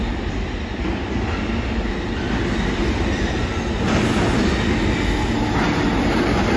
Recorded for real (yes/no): yes